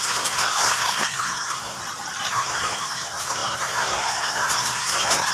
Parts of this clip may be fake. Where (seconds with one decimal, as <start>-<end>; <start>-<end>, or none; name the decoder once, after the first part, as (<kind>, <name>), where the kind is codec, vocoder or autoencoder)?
0.0-1.8 (codec, SNAC); 2.3-5.3